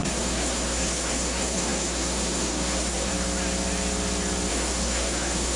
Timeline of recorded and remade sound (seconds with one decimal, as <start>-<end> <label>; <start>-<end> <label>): 0.0-3.1 remade; 3.1-4.5 recorded; 4.5-5.6 remade

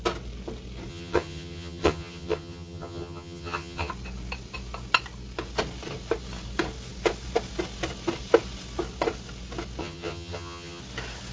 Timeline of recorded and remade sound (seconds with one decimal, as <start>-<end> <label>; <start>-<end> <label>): 0.0-0.9 recorded; 0.9-3.9 remade; 3.9-9.8 recorded; 9.8-10.8 remade; 10.8-11.3 recorded

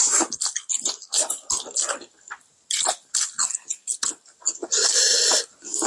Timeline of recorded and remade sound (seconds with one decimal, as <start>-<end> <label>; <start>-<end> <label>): 0.0-5.9 recorded

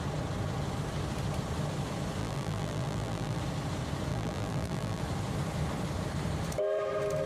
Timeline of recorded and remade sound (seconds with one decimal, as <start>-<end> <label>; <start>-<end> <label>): 0.0-2.2 recorded; 2.2-3.4 remade; 3.4-4.1 recorded; 4.1-5.0 remade; 5.0-7.3 recorded

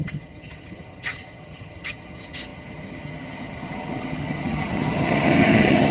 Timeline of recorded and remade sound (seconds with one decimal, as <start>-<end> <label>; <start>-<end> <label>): 0.0-5.9 remade

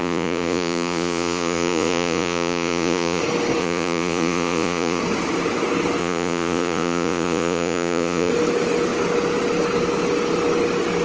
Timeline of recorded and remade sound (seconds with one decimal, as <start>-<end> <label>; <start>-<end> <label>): 0.0-3.2 remade; 3.2-3.6 recorded; 3.6-5.0 remade; 5.0-6.0 recorded; 6.0-8.3 remade; 8.3-11.0 recorded